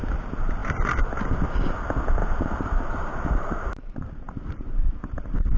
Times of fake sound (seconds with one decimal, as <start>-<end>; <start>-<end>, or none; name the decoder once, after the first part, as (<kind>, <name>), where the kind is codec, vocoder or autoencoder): 2.2-5.6 (vocoder, BigVGAN v2)

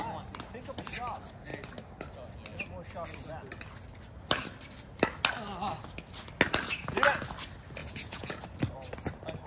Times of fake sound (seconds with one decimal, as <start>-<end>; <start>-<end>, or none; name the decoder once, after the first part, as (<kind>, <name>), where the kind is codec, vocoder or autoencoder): 7.8-8.3 (vocoder, Vocos)

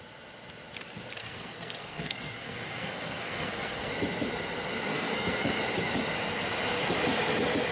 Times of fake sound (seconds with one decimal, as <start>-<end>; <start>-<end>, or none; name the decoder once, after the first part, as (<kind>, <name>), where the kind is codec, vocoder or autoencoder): 1.2-3.9 (codec, SNAC); 4.9-5.6

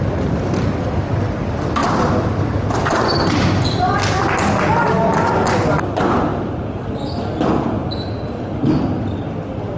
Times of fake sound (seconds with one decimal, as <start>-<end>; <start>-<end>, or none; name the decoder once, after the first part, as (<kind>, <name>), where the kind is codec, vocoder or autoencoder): 1.8-4.0 (vocoder, BigVGAN v2)

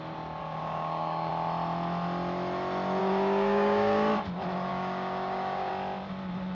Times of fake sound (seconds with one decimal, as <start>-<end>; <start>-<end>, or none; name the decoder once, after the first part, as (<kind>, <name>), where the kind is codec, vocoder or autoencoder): 0.4-1.3 (codec, DAC); 3.0-4.1; 4.7-5.7

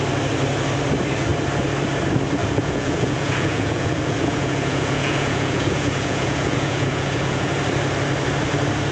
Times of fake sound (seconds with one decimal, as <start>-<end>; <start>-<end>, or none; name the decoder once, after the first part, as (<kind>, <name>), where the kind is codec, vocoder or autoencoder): 2.4-7.6 (vocoder, Vocos)